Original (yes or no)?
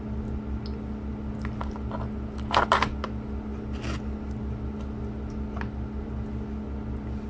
yes